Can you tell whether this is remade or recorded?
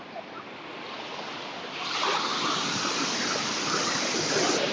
recorded